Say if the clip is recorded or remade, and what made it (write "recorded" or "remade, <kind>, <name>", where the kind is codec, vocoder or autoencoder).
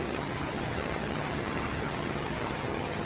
remade, vocoder, HiFi-GAN